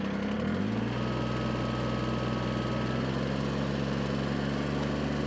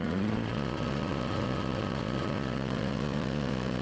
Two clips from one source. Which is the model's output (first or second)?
second